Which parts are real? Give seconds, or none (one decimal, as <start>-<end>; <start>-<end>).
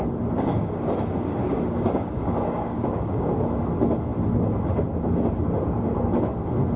0.0-0.5; 3.3-6.8